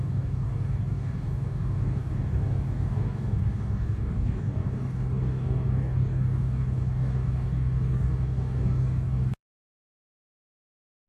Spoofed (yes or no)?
yes